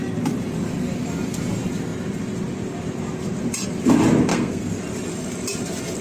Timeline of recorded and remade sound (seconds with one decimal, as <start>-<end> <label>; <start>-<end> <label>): 0.0-4.3 recorded; 4.3-4.8 remade; 4.8-6.0 recorded